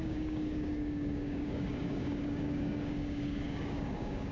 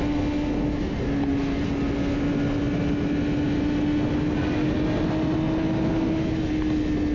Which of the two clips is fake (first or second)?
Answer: first